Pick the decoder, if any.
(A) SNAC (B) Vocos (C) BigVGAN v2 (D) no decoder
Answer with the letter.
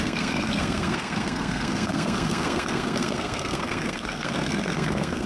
A